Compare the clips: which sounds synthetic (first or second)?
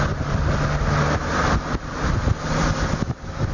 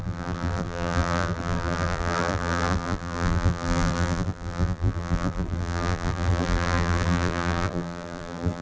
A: second